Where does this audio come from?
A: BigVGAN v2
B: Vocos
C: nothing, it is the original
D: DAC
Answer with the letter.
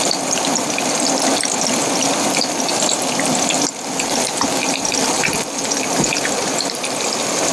C